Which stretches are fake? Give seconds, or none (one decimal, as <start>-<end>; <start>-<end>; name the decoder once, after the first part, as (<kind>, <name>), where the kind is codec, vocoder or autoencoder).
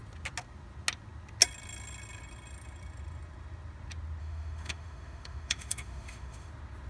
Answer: 4.2-6.5 (autoencoder, DAC-VAE)